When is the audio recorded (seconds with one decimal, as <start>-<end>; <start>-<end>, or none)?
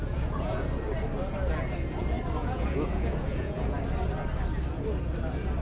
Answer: 0.7-2.4; 3.8-5.6